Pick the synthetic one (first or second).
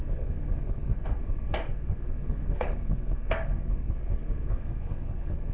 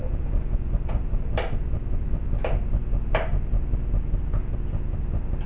first